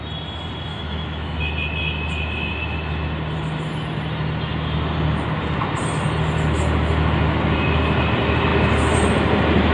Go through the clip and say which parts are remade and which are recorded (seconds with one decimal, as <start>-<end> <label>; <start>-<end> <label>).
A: 0.0-0.7 recorded; 0.7-1.4 remade; 1.4-9.7 recorded